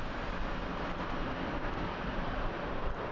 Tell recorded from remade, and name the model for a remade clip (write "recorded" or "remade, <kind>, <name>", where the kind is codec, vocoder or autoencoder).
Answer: recorded